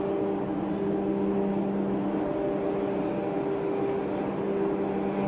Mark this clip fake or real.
real